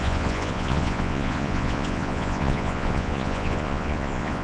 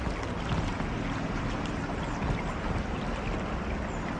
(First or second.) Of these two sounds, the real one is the second